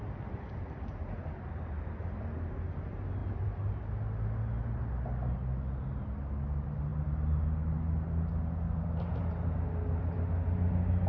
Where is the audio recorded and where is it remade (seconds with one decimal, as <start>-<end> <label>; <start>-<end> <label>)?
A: 0.0-11.1 recorded